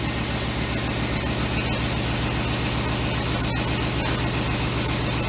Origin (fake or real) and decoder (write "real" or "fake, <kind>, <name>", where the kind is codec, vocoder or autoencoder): real